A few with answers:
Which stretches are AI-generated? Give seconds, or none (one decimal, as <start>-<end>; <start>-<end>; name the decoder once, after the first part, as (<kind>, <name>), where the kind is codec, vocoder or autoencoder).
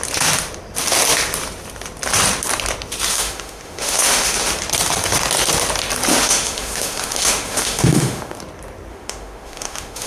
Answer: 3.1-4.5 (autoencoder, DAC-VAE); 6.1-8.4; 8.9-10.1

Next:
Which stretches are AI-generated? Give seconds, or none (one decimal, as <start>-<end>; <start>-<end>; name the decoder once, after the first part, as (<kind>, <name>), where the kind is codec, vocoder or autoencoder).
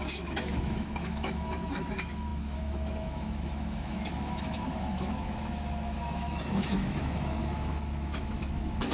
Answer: 0.0-8.9 (autoencoder, DAC-VAE)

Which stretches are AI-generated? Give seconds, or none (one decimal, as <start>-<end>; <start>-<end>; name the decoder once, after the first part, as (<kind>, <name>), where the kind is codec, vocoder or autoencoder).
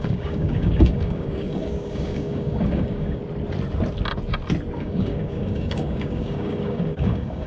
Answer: 0.0-3.2 (codec, DAC); 4.8-7.5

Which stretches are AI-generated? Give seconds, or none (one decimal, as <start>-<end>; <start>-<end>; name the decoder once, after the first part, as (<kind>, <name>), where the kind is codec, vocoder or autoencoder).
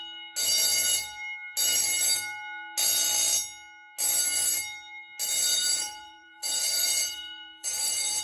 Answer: 5.5-8.2 (vocoder, BigVGAN v2)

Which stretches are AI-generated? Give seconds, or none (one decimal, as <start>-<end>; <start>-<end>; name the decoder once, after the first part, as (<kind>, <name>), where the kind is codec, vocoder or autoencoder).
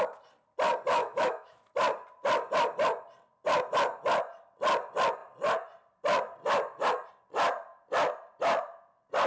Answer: 1.0-1.7 (autoencoder, DAC-VAE)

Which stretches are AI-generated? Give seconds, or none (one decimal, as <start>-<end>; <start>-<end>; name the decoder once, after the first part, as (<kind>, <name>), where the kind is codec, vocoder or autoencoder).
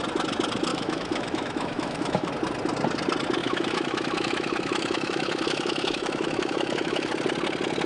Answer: 0.7-2.3 (autoencoder, DAC-VAE); 3.4-7.1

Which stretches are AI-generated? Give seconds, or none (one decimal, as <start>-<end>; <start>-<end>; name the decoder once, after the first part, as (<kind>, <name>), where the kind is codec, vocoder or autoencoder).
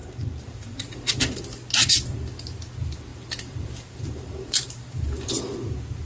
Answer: 0.0-1.4 (vocoder, BigVGAN v2); 3.1-5.3